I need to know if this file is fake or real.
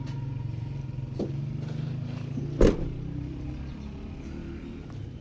real